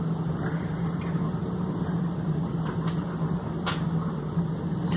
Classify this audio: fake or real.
real